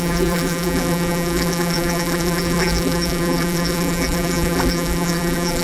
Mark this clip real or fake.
fake